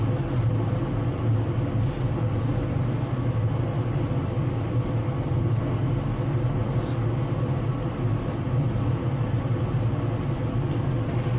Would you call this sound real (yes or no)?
yes